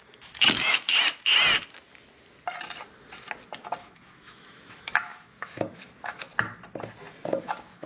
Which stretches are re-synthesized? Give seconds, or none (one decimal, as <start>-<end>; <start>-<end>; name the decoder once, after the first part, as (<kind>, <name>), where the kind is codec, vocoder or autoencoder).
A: 0.0-0.9 (autoencoder, DAC-VAE); 3.8-6.3; 7.4-7.9